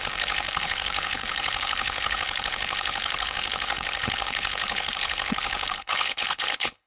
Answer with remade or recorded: remade